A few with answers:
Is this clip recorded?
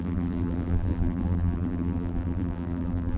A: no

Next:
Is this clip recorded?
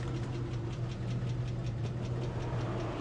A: yes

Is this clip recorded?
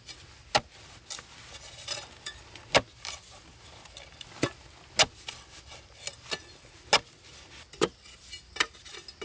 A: yes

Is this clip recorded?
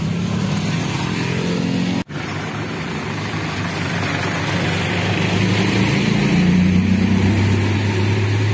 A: yes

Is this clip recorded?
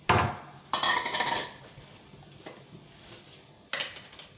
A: yes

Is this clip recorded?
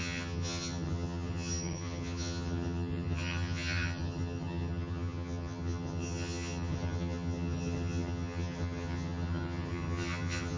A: no